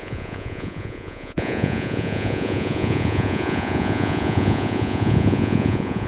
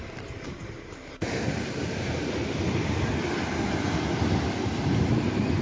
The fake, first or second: first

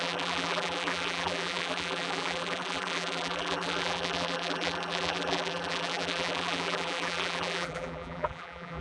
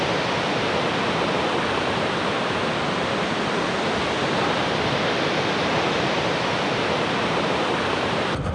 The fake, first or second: first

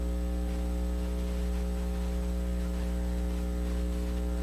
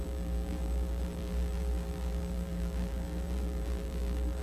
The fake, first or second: second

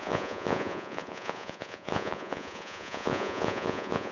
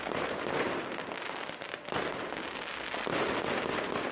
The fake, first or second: first